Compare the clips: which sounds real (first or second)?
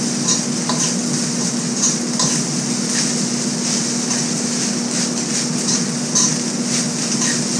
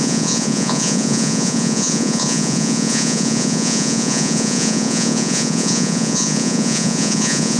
first